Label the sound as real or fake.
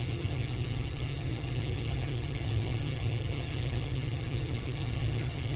fake